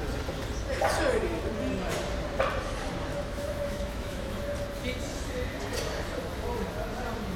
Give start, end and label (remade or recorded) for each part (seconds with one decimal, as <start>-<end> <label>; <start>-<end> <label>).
0.0-3.1 recorded; 3.1-4.4 remade; 4.4-7.4 recorded